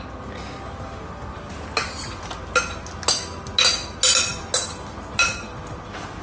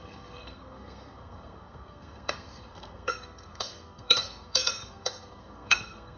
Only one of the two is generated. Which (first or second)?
second